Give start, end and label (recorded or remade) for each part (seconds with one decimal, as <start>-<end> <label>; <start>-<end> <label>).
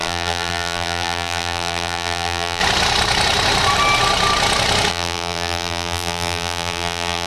0.0-2.6 remade; 2.6-4.9 recorded; 4.9-7.3 remade